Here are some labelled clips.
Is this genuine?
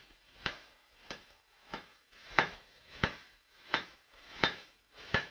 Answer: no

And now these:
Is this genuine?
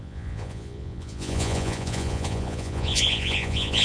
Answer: no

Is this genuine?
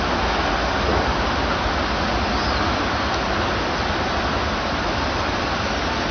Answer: yes